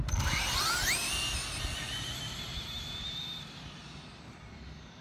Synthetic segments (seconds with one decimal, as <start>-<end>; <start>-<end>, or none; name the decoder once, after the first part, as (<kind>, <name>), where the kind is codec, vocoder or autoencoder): 1.8-5.0 (vocoder, BigVGAN v2)